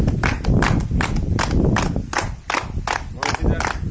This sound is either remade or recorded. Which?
recorded